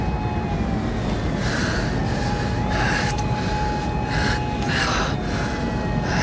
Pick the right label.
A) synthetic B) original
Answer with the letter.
B